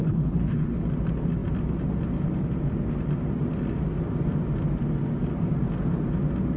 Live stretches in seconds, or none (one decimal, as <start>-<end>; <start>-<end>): 0.8-6.6